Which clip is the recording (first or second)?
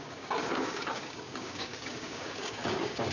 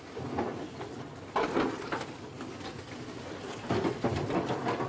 second